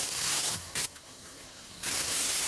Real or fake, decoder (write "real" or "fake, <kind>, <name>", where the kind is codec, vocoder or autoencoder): fake, codec, SNAC